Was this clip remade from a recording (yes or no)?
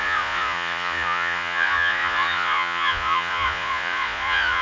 yes